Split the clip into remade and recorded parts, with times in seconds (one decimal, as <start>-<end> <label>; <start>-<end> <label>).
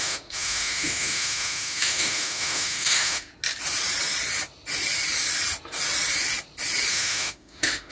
0.0-3.3 remade; 3.3-6.9 recorded; 6.9-7.9 remade